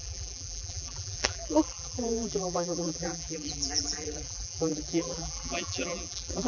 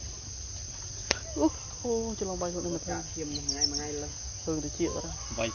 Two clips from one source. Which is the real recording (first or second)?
second